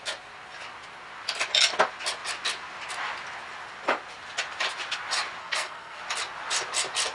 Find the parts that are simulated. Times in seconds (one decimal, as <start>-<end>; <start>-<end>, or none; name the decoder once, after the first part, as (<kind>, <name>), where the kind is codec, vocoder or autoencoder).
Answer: 5.4-6.0 (codec, SNAC)